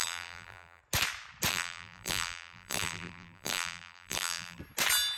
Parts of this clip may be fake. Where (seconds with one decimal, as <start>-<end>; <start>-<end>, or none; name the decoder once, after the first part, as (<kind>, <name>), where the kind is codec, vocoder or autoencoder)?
0.0-0.8 (vocoder, BigVGAN v2); 1.5-4.6